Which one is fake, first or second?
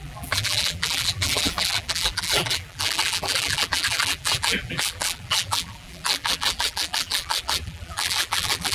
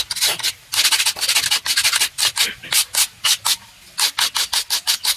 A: first